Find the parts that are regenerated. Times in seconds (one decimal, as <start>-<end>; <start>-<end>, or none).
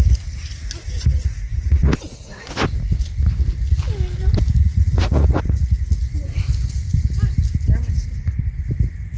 0.8-2.5; 4.6-5.9